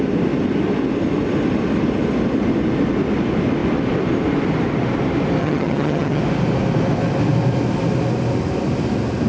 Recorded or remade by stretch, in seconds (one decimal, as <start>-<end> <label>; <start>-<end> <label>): 0.0-5.4 recorded; 5.4-6.2 remade; 6.2-9.3 recorded